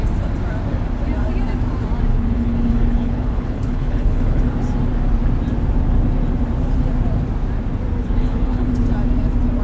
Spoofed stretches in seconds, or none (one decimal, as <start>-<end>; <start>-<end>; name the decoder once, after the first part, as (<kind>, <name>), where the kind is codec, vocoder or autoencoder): 2.1-4.4 (codec, HILCodec); 8.2-8.7